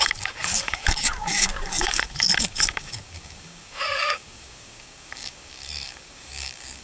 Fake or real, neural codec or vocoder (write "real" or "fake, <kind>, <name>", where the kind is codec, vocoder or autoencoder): fake, codec, DAC